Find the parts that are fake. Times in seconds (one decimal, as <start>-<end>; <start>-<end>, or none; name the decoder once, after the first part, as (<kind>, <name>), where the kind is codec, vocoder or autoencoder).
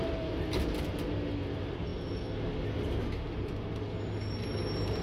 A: none